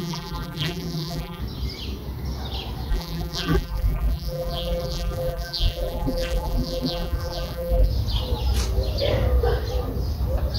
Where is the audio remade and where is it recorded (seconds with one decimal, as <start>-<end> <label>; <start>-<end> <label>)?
0.0-1.4 remade; 1.4-2.9 recorded; 2.9-7.9 remade; 7.9-10.6 recorded